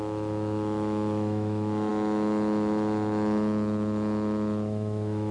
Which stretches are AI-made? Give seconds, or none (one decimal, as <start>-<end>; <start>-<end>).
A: 0.0-5.3